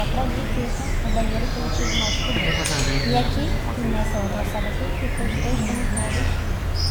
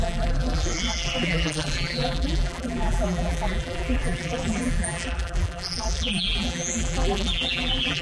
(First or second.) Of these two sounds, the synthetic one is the second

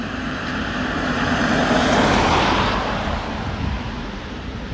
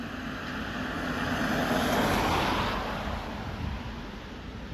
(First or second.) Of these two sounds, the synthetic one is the first